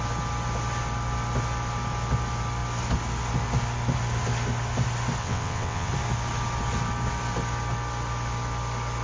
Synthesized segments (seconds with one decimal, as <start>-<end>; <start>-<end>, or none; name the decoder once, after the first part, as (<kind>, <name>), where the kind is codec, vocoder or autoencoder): 5.2-5.9 (vocoder, WaveNeXt)